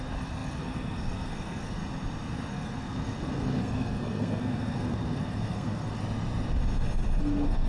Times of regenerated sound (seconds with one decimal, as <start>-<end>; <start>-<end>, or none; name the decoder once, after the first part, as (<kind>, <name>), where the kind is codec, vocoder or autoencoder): 0.0-1.8 (codec, SNAC); 2.5-6.0; 7.2-7.7